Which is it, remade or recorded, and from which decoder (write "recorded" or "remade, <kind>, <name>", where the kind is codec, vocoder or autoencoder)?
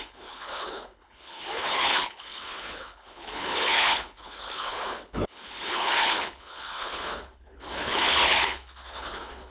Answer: remade, codec, HILCodec